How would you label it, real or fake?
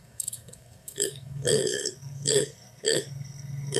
fake